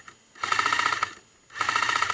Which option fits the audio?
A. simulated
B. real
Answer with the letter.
B